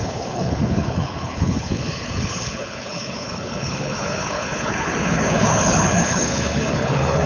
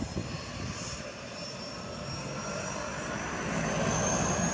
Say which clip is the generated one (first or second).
first